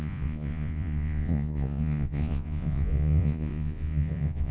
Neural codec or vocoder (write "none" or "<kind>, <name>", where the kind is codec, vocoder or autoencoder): vocoder, Vocos